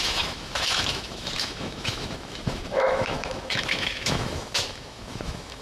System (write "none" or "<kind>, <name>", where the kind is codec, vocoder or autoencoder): autoencoder, DAC-VAE